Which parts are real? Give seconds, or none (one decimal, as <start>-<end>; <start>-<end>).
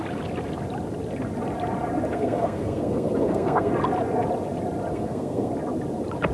0.0-2.1; 3.7-4.9; 5.5-6.3